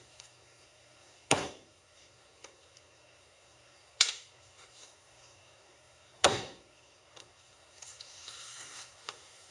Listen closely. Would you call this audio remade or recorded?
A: remade